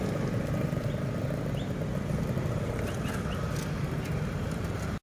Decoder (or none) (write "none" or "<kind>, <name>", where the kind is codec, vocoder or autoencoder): none